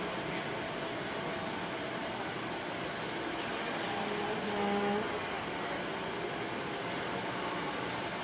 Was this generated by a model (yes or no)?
no